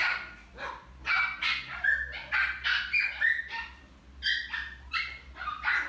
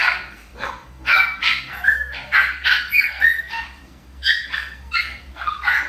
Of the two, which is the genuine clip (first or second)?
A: first